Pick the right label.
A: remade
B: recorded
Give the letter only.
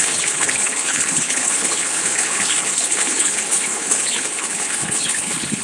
A